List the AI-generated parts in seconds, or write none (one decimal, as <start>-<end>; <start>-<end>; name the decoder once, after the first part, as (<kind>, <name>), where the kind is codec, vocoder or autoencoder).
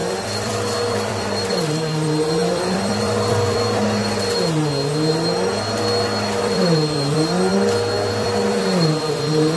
0.0-4.0 (vocoder, BigVGAN v2); 6.4-7.5; 8.1-9.6